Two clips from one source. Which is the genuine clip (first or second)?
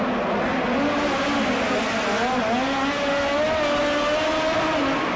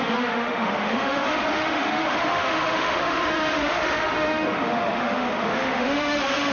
first